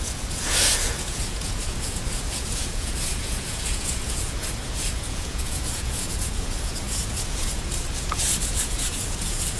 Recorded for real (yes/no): no